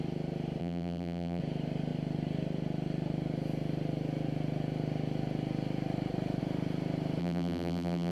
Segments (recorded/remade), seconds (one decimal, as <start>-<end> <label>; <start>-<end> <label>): 0.0-0.6 recorded; 0.6-1.4 remade; 1.4-7.2 recorded; 7.2-8.1 remade